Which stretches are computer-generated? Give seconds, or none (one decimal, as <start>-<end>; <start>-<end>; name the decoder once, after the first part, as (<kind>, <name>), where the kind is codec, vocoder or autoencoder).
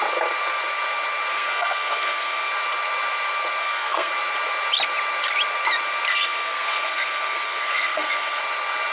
1.3-2.5 (codec, SNAC); 3.6-4.1; 6.1-8.4